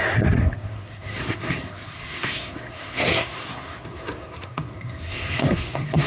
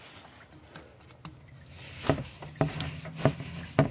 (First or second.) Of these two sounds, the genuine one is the second